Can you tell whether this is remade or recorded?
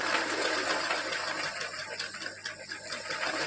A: recorded